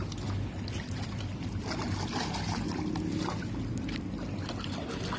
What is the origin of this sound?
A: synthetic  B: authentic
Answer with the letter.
B